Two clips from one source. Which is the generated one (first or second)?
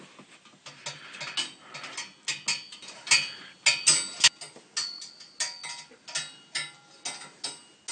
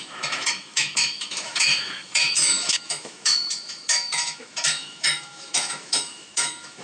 second